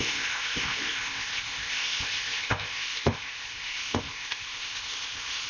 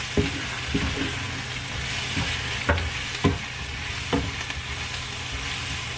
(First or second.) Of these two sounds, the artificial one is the first